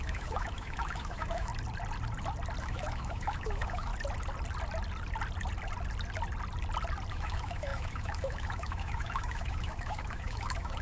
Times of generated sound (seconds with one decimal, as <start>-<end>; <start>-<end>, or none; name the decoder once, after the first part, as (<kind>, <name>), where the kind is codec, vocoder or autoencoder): 0.0-1.5 (autoencoder, DAC-VAE); 2.6-3.9; 7.1-10.8